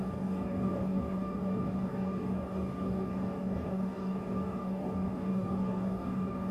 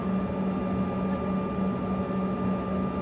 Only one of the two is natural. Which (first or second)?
second